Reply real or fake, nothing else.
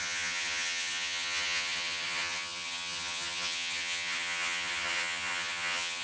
fake